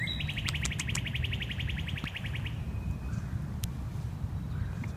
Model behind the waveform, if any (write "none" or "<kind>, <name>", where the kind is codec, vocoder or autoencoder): none